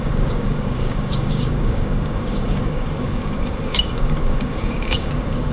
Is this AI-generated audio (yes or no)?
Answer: yes